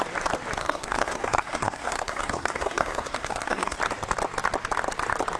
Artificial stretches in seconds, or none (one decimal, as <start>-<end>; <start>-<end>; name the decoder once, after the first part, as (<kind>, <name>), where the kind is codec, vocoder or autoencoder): 0.6-3.8 (codec, SNAC)